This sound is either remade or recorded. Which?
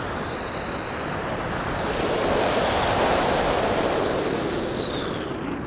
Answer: recorded